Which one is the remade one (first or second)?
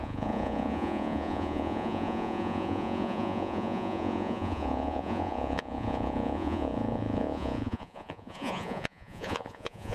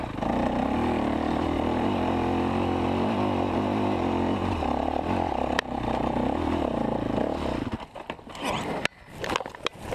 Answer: first